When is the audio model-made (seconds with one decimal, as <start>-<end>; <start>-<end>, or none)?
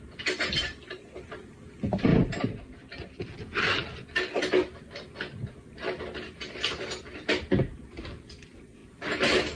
2.1-3.3